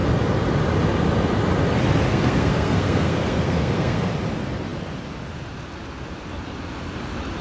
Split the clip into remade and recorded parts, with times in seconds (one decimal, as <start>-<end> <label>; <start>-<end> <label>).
0.0-2.1 recorded; 2.1-4.1 remade; 4.1-7.4 recorded